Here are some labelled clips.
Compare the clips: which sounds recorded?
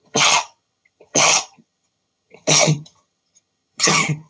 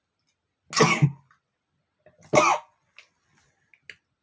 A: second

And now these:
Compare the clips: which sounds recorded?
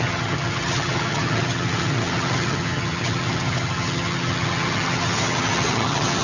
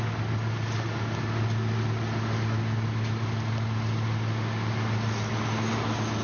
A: second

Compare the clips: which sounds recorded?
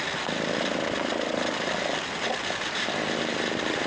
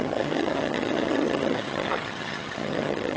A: first